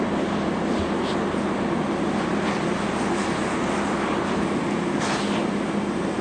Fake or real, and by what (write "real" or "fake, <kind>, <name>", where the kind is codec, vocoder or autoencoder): real